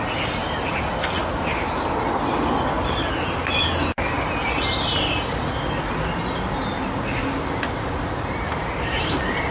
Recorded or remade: recorded